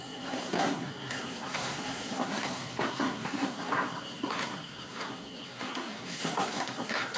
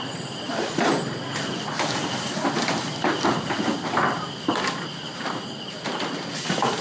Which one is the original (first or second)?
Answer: second